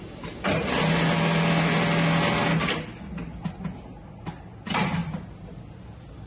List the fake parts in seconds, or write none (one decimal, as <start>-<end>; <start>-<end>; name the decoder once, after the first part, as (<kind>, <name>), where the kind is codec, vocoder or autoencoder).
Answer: none